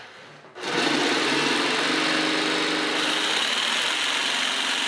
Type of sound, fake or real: real